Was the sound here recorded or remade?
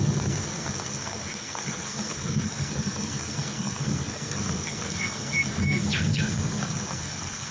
remade